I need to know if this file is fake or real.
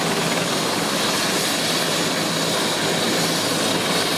real